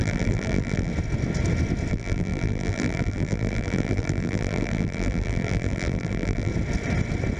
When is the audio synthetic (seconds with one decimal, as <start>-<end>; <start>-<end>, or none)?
0.0-0.9; 1.9-6.5